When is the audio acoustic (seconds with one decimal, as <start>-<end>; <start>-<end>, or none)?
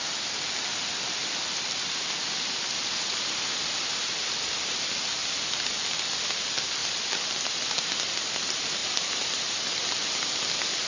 0.0-1.2; 4.4-6.8; 7.5-8.8; 9.6-10.9